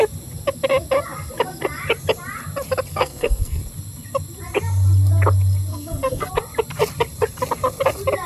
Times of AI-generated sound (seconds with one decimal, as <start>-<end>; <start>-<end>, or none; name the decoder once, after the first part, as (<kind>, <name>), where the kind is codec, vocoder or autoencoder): 2.9-3.6 (codec, SNAC); 5.7-6.3